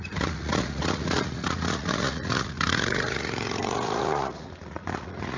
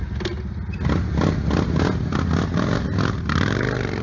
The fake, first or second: first